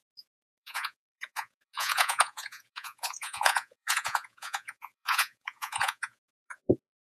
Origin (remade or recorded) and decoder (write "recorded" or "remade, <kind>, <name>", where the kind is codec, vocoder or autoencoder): remade, vocoder, Vocos